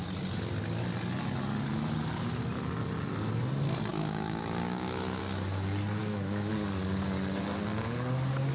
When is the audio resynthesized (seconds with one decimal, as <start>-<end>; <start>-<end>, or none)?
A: 3.9-5.2; 6.0-6.5